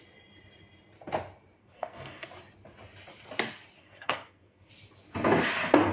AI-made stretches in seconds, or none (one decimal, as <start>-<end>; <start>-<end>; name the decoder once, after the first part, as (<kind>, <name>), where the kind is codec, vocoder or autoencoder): 1.6-2.3 (codec, SNAC); 3.8-4.7